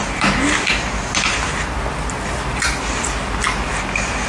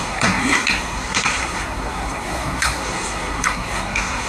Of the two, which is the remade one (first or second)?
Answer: second